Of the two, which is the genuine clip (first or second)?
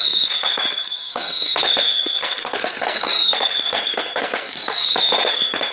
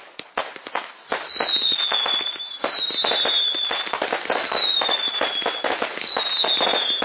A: second